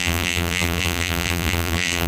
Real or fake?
fake